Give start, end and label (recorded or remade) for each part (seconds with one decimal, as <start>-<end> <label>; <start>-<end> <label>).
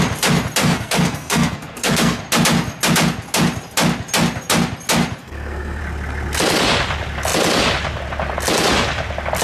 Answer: 0.0-0.6 recorded; 0.6-2.2 remade; 2.2-5.2 recorded; 5.2-5.8 remade; 5.8-9.4 recorded